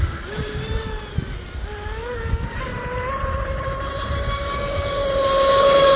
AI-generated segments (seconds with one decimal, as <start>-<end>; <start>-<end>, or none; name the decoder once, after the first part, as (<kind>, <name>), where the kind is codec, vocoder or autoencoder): 0.0-0.9 (codec, DAC); 2.3-2.7; 4.2-5.0; 5.5-6.0